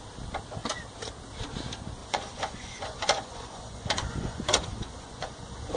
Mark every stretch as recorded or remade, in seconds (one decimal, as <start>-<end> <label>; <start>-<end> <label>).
0.0-2.0 recorded; 2.0-5.8 remade